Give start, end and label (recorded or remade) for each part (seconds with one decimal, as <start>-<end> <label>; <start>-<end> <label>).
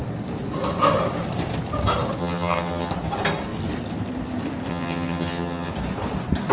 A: 0.0-2.2 recorded; 2.2-2.9 remade; 2.9-4.7 recorded; 4.7-5.7 remade; 5.7-6.5 recorded